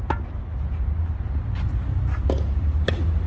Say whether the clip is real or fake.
real